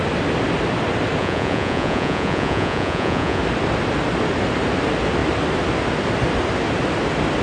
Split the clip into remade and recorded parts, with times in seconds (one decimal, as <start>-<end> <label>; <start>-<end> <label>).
0.0-1.2 recorded; 1.2-3.4 remade; 3.4-7.4 recorded